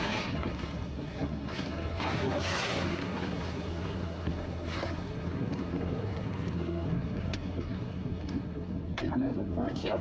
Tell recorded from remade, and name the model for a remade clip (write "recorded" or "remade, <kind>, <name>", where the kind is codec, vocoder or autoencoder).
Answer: remade, codec, SNAC